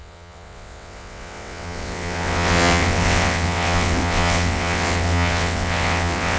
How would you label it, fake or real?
fake